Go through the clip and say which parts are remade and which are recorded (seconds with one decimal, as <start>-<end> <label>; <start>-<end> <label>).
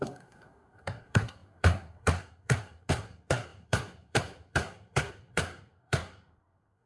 0.0-6.9 remade